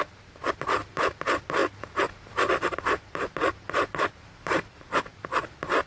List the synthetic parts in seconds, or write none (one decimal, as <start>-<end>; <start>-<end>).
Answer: 0.0-5.1